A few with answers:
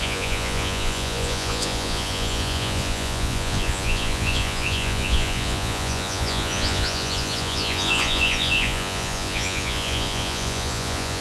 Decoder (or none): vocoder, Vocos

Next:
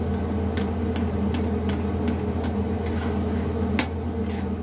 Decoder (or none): none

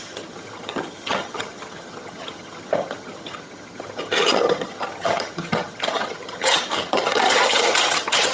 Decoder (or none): vocoder, HiFi-GAN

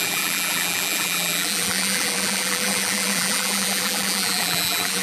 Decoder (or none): vocoder, BigVGAN v2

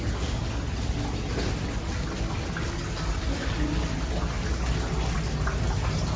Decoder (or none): none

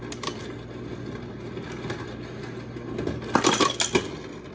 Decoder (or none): none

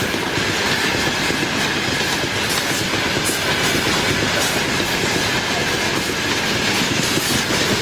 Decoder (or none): none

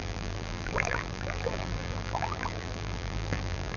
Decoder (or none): vocoder, BigVGAN v2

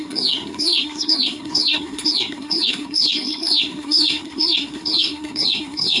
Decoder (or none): codec, SNAC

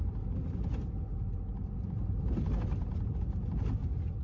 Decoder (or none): none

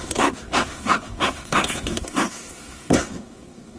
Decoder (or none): codec, SNAC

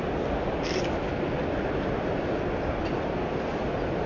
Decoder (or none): none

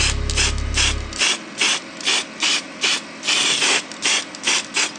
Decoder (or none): none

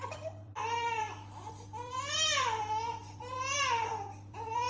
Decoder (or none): vocoder, BigVGAN v2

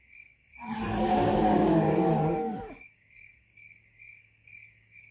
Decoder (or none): codec, DAC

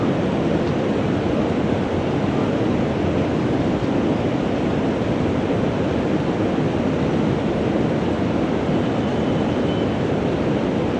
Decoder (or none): none